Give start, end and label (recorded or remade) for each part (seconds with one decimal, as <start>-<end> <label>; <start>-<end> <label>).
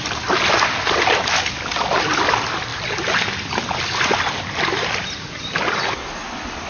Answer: 0.0-6.7 recorded